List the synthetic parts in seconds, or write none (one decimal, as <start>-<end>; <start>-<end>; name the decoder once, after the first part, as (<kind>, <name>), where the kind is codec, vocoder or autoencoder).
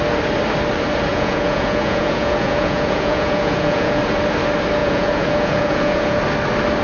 1.1-4.0 (vocoder, Vocos); 4.8-6.2